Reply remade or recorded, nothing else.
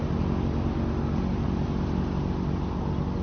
recorded